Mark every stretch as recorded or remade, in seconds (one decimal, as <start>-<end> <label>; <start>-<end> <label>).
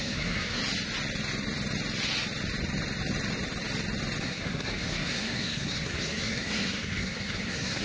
0.0-0.6 remade; 0.6-4.2 recorded; 4.2-7.8 remade